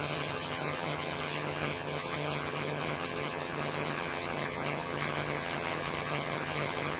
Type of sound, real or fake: fake